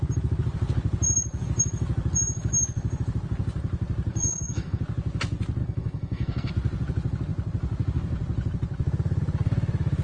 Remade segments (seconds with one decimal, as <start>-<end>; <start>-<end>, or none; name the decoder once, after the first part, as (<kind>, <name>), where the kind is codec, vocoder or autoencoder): 4.1-4.8 (codec, SNAC); 5.6-6.5